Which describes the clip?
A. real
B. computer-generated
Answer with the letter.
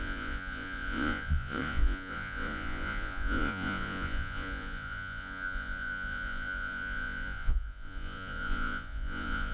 B